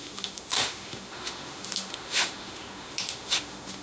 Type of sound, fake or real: fake